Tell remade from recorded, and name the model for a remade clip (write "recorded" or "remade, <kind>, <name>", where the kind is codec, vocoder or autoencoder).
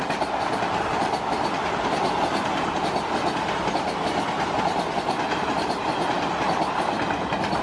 recorded